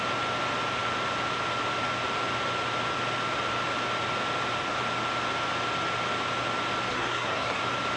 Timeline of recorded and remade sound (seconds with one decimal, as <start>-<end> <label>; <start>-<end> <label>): 0.0-6.9 recorded; 6.9-7.6 remade; 7.6-8.0 recorded